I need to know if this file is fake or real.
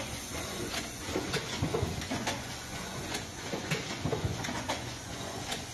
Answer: fake